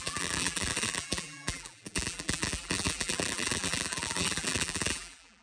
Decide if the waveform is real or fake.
fake